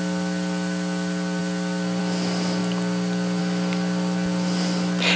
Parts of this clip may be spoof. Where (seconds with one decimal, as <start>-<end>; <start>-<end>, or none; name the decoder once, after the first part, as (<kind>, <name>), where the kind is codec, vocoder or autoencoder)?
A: none